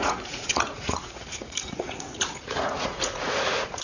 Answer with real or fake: fake